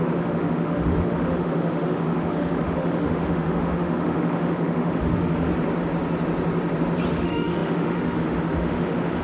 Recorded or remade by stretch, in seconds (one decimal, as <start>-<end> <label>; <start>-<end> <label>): 0.0-5.5 remade; 5.5-7.1 recorded; 7.1-9.2 remade